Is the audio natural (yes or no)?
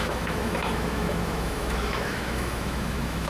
no